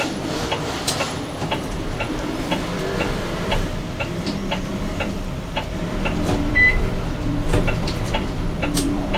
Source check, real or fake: fake